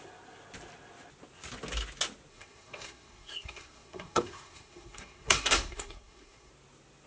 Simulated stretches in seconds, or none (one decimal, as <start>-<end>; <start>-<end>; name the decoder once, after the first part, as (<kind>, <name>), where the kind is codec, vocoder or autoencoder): 2.3-6.5 (codec, SNAC)